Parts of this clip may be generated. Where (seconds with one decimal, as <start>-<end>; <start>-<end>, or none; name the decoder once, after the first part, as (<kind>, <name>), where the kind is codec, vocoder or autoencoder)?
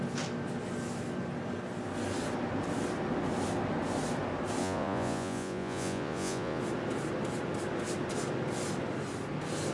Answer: 4.6-6.6 (vocoder, Vocos)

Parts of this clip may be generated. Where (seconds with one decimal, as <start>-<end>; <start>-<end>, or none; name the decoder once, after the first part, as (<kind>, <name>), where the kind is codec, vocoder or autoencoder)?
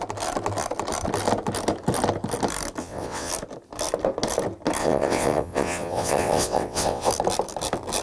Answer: 2.8-3.3 (vocoder, WaveNeXt); 4.8-7.1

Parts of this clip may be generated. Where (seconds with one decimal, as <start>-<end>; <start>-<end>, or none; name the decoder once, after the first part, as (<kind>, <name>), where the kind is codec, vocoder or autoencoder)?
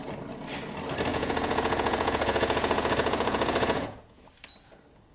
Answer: 1.1-4.2 (vocoder, Vocos)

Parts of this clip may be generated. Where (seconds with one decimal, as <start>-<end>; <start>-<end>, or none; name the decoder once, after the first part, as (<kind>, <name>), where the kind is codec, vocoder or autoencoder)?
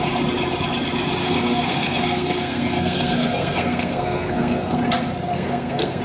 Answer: 1.2-4.8 (codec, SNAC); 5.3-6.0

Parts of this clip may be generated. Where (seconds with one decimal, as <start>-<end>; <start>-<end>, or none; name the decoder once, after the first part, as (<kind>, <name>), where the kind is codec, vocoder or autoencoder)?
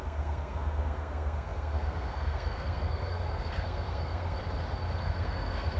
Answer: 0.0-4.4 (codec, SNAC); 5.0-5.8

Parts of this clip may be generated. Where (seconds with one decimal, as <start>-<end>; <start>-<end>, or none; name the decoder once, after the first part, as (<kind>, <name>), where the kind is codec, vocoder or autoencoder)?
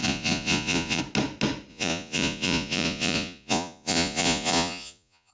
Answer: 0.0-1.0 (vocoder, Vocos); 1.7-5.3